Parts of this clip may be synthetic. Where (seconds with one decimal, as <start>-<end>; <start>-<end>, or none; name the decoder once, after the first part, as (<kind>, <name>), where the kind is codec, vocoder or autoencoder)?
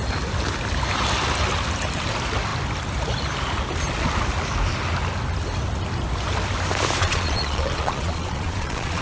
7.0-9.0 (vocoder, Vocos)